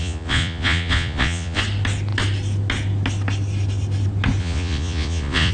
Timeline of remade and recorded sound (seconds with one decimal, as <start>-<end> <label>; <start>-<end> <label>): 0.0-1.6 remade; 1.6-4.4 recorded; 4.4-5.5 remade